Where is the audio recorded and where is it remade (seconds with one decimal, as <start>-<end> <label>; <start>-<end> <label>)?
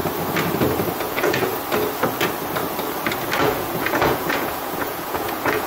0.0-1.0 recorded; 1.0-1.5 remade; 1.5-3.4 recorded; 3.4-5.7 remade